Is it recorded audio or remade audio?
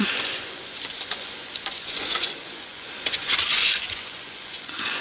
remade